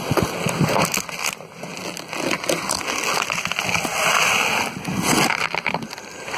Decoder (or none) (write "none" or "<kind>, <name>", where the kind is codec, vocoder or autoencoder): none